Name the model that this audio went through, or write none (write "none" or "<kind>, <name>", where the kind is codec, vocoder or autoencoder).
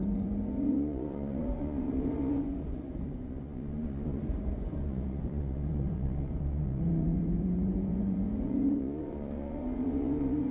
vocoder, Vocos